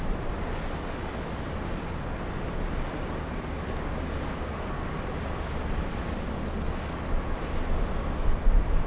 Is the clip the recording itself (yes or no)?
yes